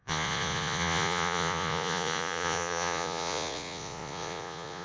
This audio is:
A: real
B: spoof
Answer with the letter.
B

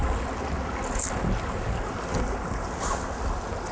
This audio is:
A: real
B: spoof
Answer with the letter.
A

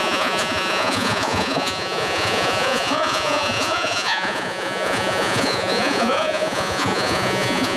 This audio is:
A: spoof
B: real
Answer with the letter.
A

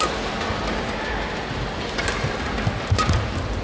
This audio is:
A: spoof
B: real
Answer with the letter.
B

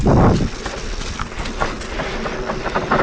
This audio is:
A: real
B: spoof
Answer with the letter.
A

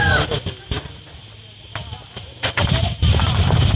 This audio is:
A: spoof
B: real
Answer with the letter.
B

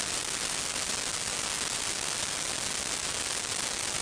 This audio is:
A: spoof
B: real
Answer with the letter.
B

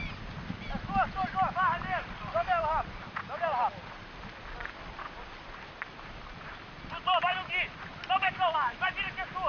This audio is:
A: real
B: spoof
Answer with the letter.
A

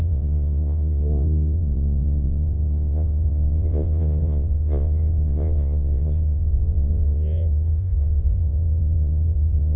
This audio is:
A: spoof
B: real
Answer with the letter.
A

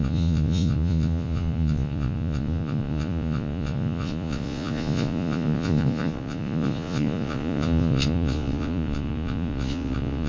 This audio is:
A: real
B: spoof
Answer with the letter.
B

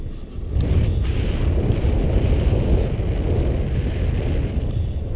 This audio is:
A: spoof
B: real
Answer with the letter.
B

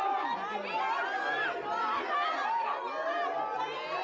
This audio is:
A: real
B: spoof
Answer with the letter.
A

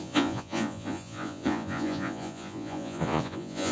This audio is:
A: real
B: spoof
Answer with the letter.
B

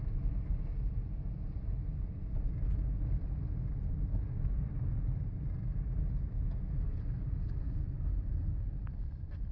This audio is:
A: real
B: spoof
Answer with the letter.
A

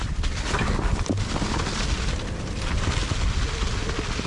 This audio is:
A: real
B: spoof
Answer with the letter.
A